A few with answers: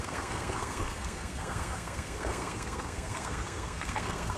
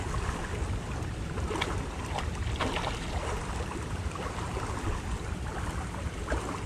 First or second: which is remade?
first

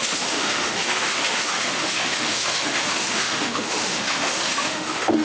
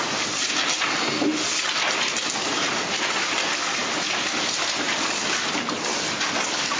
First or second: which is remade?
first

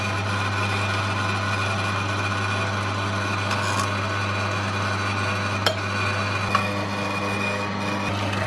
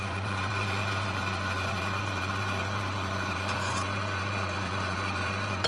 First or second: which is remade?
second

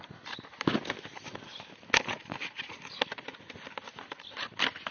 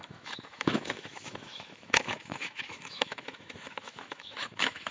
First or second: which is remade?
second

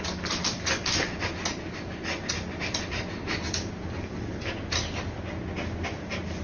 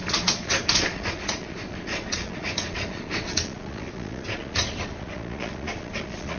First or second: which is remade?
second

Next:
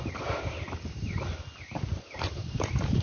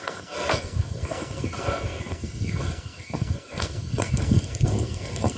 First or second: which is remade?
second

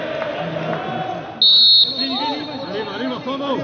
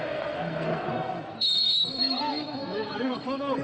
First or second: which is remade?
second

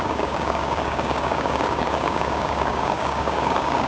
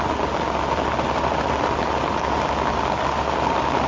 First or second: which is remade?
first